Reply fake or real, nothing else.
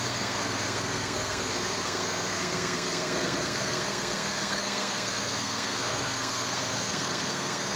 fake